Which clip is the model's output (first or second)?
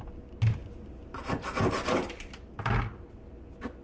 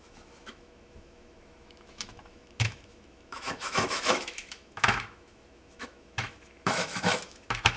second